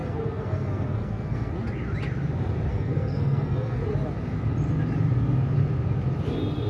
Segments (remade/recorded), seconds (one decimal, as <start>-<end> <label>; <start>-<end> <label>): 0.0-1.5 remade; 1.5-2.7 recorded; 2.7-3.8 remade; 3.8-6.7 recorded